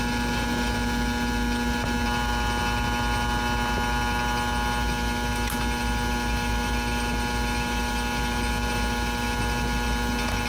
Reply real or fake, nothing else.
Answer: real